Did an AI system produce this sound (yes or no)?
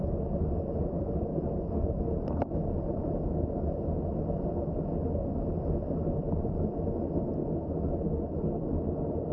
no